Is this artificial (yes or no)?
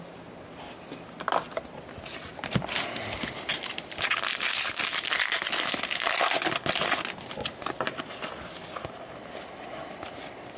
no